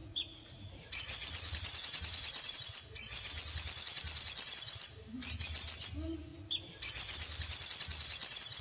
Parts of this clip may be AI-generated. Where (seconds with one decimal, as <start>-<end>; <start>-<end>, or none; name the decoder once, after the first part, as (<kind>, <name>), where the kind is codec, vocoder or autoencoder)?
0.0-2.6 (vocoder, Vocos)